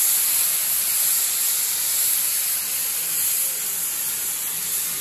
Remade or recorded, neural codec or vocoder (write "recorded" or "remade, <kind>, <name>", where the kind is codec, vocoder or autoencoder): recorded